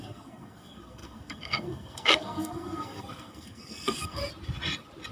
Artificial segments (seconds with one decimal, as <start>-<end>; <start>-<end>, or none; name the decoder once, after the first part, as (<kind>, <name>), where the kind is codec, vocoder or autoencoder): 0.0-4.2 (codec, SNAC)